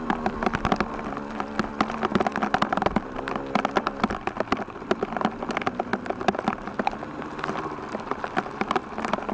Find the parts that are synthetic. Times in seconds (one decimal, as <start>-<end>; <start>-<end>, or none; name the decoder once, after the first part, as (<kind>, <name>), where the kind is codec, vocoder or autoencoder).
none